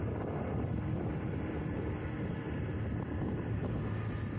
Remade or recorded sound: recorded